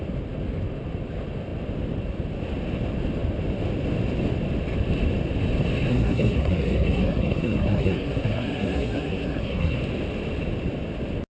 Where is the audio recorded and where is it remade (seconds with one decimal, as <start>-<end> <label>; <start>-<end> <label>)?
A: 0.0-5.9 recorded; 5.9-9.8 remade; 9.8-11.4 recorded